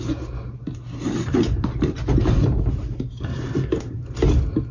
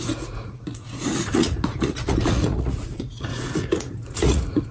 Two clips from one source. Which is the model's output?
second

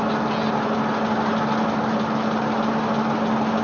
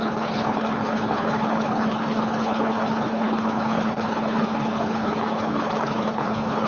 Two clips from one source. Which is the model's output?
second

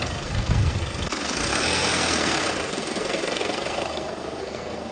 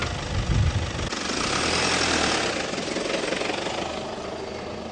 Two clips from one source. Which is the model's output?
first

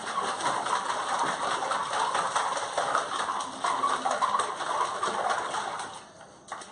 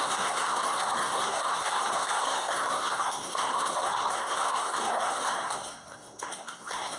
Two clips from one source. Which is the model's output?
second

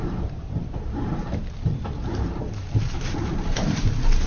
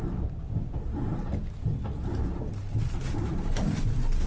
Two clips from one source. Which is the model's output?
first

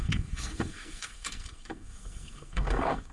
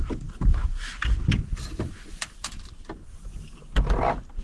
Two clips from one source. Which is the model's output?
first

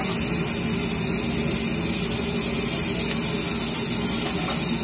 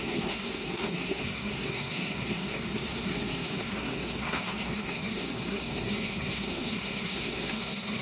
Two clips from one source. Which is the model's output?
second